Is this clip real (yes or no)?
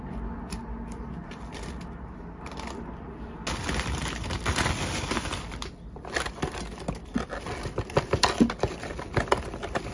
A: yes